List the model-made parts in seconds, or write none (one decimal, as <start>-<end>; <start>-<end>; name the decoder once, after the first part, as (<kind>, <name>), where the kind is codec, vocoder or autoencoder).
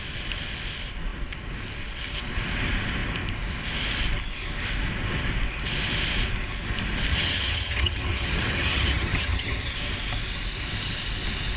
7.1-9.7 (vocoder, HiFi-GAN)